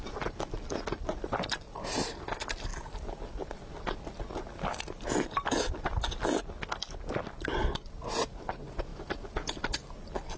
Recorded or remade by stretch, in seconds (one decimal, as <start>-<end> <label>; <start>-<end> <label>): 0.0-10.4 recorded